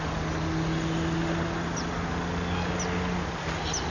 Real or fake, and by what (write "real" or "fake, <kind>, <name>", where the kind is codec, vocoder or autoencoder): real